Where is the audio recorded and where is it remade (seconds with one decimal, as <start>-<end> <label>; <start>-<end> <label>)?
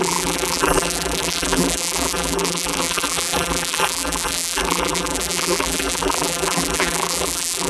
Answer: 0.0-7.7 remade